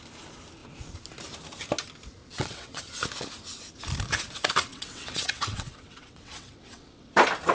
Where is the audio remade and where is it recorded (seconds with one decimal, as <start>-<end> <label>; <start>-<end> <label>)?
0.0-2.2 recorded; 2.2-2.8 remade; 2.8-4.7 recorded; 4.7-7.1 remade; 7.1-7.5 recorded